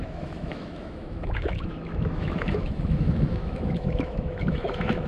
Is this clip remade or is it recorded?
remade